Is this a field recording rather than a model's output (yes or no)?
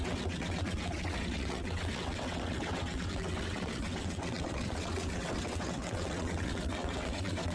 no